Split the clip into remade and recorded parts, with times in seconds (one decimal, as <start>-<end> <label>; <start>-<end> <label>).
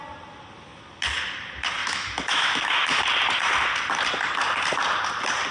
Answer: 0.0-1.8 recorded; 1.8-3.0 remade; 3.0-5.5 recorded